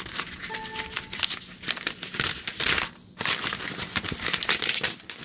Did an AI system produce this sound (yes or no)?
no